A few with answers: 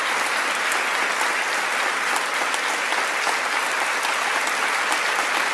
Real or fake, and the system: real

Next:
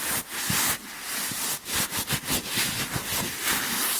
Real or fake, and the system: real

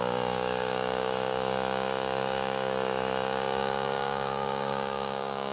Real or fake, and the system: fake, codec, DAC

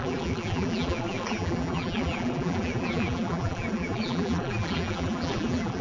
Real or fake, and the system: fake, vocoder, BigVGAN v2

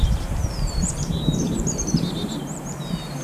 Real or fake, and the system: fake, vocoder, BigVGAN v2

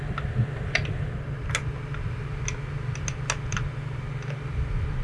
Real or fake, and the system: real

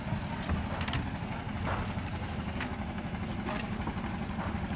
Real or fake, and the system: real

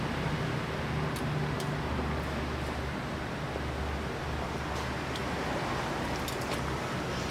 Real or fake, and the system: real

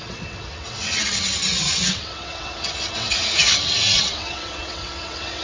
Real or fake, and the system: fake, vocoder, WaveNeXt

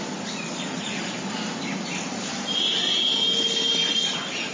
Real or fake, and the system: fake, vocoder, BigVGAN v2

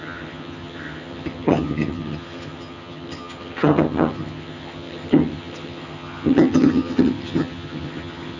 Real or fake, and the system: fake, vocoder, HiFi-GAN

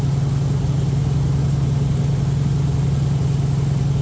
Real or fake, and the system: real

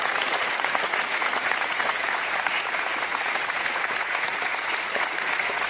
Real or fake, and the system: fake, vocoder, Vocos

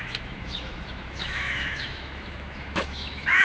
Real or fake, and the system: fake, autoencoder, DAC-VAE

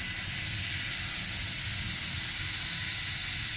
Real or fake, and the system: real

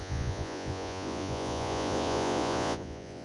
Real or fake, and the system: fake, vocoder, Vocos